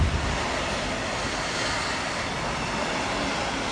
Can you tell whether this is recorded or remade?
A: recorded